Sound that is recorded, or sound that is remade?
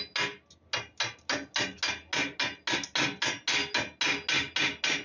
recorded